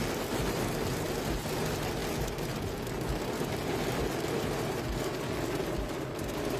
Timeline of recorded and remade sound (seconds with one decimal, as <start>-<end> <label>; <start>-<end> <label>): 0.0-6.6 recorded

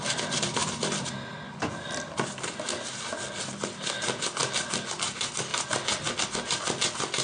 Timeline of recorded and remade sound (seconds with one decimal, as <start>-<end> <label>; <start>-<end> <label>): 0.0-7.2 recorded

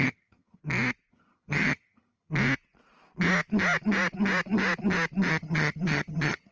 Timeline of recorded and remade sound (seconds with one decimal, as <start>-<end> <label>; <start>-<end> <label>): 0.0-0.6 remade; 0.6-1.1 recorded; 1.1-2.3 remade; 2.3-5.3 recorded; 5.3-6.5 remade

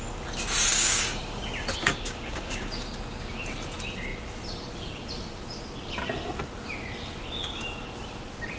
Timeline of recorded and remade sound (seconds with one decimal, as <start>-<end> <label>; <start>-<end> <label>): 0.0-0.7 recorded; 0.7-1.4 remade; 1.4-1.8 recorded; 1.8-2.9 remade; 2.9-8.6 recorded

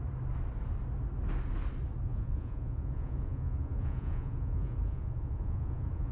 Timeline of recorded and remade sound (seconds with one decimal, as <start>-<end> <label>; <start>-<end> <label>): 0.0-2.1 recorded; 2.1-6.1 remade

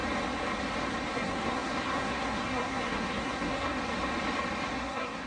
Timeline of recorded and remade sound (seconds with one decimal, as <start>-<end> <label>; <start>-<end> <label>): 0.0-1.1 recorded; 1.1-3.8 remade; 3.8-4.7 recorded; 4.7-5.3 remade

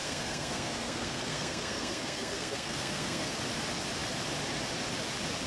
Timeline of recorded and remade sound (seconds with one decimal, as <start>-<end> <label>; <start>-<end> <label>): 0.0-3.3 remade; 3.3-5.5 recorded